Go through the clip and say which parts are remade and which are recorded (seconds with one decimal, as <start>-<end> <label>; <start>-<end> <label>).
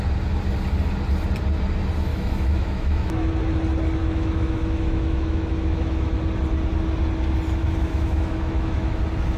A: 0.0-2.1 recorded; 2.1-3.3 remade; 3.3-4.0 recorded; 4.0-6.2 remade; 6.2-7.6 recorded; 7.6-9.0 remade; 9.0-9.4 recorded